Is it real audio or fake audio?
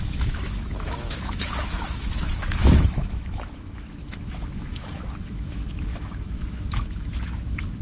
fake